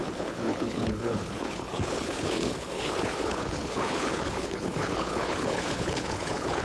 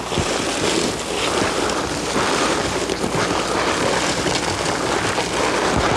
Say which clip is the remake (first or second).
first